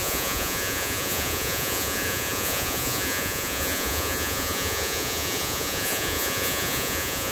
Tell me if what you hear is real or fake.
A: fake